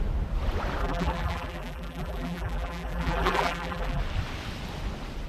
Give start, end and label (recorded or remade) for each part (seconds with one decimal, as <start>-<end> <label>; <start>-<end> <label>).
0.0-0.8 recorded; 0.8-4.0 remade; 4.0-5.3 recorded